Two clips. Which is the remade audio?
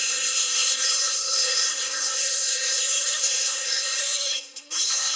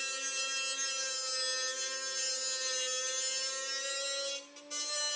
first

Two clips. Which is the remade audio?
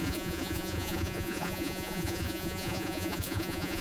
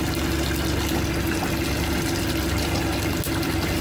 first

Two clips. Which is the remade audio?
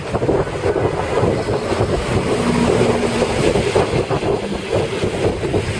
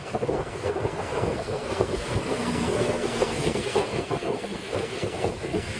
second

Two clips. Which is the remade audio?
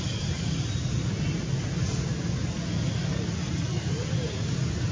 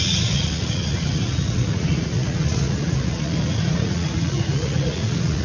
second